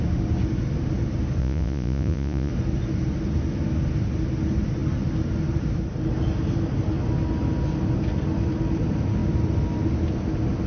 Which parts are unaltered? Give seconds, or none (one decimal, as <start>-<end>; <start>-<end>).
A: 0.0-1.4; 2.5-10.7